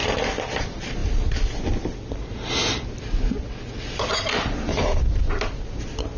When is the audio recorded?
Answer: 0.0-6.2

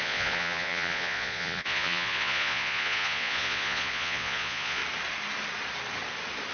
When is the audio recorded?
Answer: 4.8-6.5

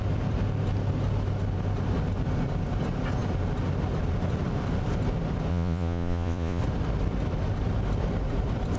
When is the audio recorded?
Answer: 0.0-5.5; 6.6-8.8

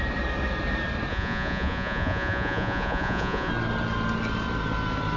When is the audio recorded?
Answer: 0.0-1.1; 3.5-5.2

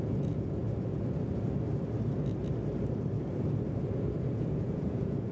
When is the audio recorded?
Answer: 0.6-3.8

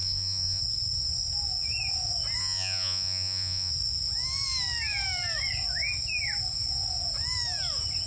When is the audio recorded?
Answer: 0.6-2.4; 3.7-8.1